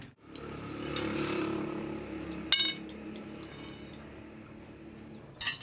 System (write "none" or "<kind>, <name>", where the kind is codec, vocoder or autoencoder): none